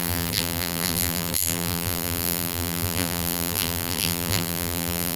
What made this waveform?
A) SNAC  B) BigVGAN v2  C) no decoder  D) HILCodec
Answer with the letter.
B